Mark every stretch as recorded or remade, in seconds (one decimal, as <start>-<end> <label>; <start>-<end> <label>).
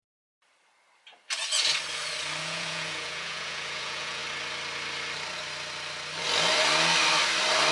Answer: 0.0-2.4 recorded; 2.4-4.2 remade; 4.2-7.7 recorded